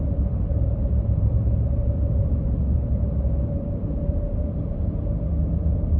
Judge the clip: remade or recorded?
remade